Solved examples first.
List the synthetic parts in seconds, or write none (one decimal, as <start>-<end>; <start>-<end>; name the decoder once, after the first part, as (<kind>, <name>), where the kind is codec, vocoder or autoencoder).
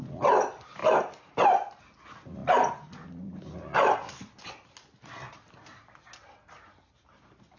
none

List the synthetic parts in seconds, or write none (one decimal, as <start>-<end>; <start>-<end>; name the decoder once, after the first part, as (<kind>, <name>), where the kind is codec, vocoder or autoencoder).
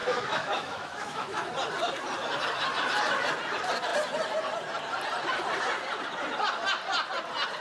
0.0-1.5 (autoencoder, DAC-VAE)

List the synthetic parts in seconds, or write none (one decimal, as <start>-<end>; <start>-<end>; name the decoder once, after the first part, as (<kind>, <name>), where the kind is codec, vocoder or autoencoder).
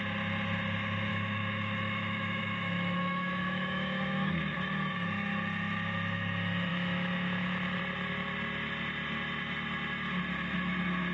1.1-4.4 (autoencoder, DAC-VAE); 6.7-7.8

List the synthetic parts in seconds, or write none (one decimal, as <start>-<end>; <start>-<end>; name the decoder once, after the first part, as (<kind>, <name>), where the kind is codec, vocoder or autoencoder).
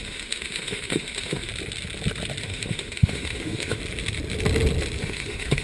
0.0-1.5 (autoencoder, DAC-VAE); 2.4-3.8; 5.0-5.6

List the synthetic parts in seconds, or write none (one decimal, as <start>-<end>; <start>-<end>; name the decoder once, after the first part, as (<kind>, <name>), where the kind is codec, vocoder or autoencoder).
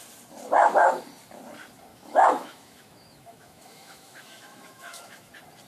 1.9-5.3 (autoencoder, DAC-VAE)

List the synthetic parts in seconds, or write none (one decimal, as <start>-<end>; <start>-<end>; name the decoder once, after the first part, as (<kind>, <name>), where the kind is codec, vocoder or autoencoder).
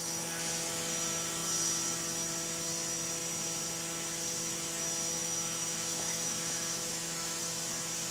5.2-7.4 (autoencoder, DAC-VAE)